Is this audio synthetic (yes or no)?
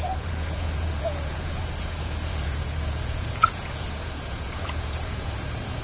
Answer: yes